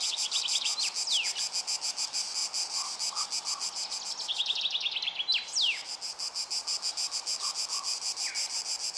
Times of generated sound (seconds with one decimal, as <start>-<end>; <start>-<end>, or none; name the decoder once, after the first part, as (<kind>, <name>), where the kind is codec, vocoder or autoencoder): none